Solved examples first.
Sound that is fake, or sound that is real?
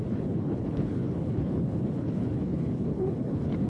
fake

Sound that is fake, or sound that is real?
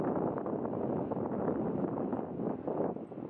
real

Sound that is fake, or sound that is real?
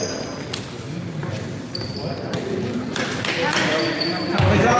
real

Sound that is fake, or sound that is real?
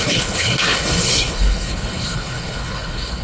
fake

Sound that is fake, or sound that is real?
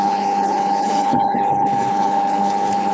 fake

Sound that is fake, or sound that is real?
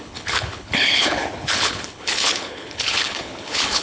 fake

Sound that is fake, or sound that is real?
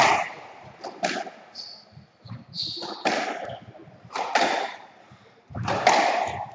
real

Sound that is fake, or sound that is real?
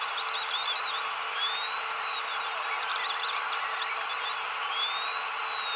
real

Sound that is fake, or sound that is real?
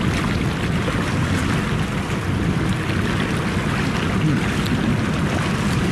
real